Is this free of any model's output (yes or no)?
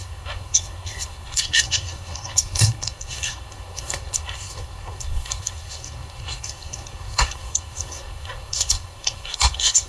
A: no